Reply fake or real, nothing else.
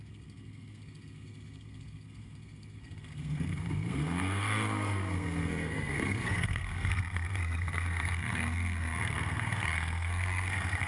fake